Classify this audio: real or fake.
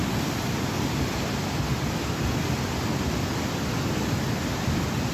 real